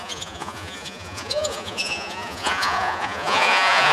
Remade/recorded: remade